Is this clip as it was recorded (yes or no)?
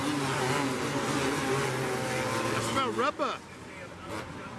yes